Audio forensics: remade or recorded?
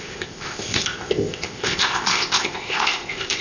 remade